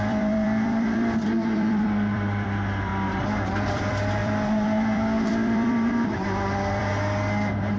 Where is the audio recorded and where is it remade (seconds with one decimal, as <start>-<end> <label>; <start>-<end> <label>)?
0.0-2.9 remade; 2.9-3.7 recorded; 3.7-6.9 remade; 6.9-7.8 recorded